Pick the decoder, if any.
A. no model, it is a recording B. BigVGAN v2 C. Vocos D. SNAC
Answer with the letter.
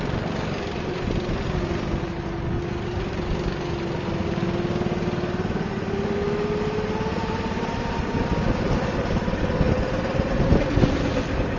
A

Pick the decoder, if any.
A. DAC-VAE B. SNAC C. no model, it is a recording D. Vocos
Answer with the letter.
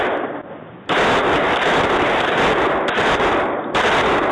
C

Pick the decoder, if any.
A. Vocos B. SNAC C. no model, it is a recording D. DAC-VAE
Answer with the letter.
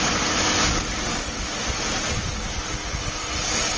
C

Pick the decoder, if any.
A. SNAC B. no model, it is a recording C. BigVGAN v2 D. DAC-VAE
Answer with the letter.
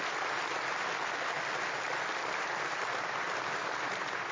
B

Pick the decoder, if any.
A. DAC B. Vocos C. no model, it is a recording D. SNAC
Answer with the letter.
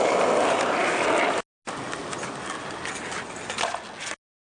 C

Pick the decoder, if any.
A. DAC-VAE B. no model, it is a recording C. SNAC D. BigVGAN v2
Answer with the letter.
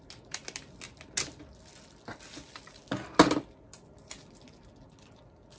B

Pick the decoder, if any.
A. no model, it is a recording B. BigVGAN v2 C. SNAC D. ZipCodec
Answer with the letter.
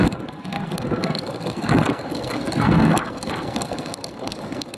C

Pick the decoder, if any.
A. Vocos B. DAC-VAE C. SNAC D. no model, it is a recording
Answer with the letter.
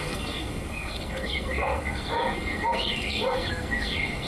C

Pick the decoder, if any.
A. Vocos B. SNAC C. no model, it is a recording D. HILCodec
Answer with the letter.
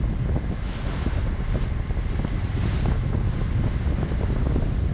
C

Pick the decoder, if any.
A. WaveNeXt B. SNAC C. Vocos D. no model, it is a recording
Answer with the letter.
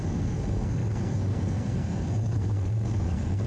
B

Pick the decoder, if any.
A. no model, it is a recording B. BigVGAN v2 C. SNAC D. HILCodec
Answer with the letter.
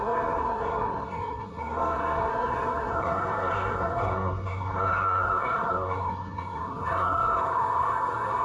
C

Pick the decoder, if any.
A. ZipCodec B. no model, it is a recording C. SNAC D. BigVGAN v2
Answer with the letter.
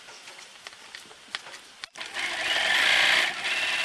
B